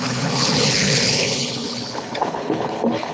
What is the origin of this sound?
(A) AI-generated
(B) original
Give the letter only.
A